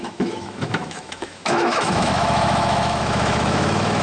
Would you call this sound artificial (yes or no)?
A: yes